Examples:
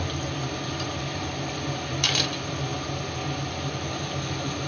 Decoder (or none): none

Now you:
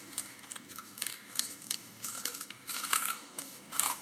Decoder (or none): codec, DAC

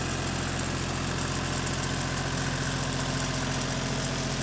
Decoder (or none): none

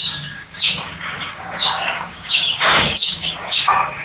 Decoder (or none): codec, DAC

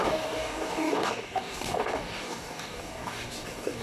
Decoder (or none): codec, DAC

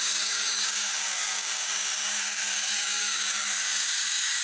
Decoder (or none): codec, DAC